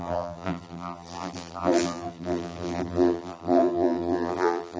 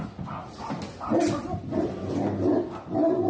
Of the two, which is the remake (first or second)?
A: first